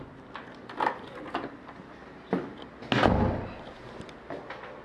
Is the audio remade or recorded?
recorded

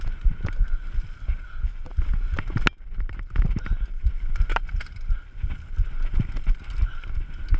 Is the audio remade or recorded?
recorded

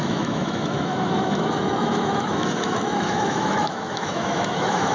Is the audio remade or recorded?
remade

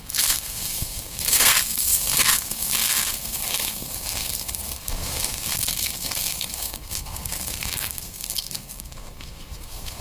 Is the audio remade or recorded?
remade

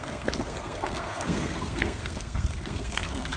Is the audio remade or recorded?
remade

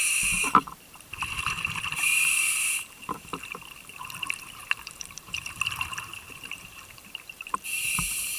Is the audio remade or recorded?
remade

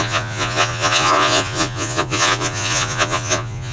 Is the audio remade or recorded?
remade